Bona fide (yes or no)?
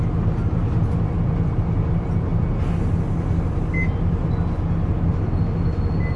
yes